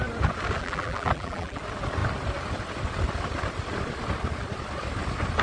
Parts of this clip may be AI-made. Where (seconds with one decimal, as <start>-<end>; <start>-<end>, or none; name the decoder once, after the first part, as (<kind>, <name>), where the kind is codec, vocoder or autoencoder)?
0.6-1.6 (vocoder, BigVGAN v2)